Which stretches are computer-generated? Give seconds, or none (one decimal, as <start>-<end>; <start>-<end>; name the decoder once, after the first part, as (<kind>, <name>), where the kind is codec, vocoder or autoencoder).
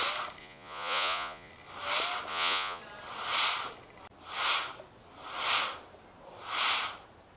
0.4-1.5 (vocoder, Vocos); 2.3-2.8